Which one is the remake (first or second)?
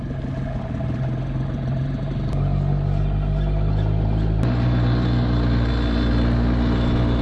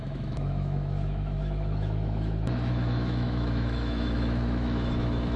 second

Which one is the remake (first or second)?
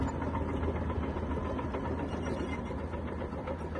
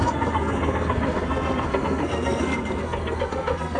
second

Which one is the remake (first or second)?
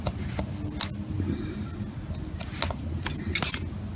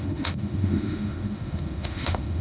second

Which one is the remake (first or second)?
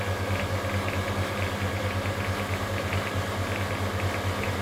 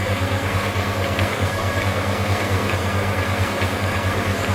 second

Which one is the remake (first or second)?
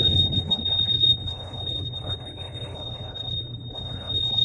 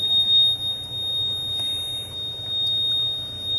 first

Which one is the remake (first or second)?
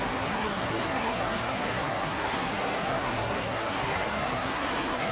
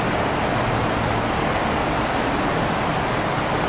first